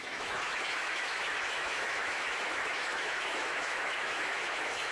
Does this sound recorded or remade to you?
remade